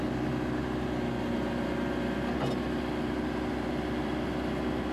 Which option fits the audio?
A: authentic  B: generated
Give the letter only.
A